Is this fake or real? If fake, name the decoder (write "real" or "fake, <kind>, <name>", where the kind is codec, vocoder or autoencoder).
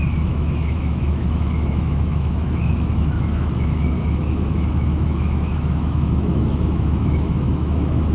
fake, autoencoder, DAC-VAE